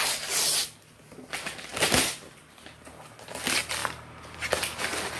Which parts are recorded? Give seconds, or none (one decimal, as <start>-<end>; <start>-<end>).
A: 0.0-5.2